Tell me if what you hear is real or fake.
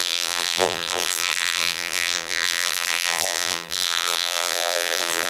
fake